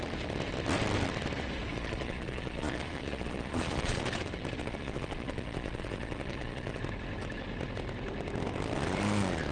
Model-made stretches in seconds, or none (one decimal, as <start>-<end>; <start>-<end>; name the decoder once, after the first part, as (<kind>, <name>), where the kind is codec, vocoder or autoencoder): 1.7-4.0 (vocoder, Vocos); 4.6-6.8